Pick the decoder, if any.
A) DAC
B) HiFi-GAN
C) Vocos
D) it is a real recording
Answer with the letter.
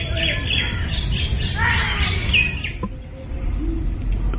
D